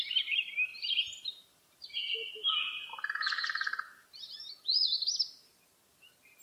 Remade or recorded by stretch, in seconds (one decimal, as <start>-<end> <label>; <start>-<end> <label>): 0.0-0.7 recorded; 0.7-4.5 remade; 4.5-6.4 recorded